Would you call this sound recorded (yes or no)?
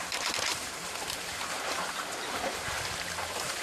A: no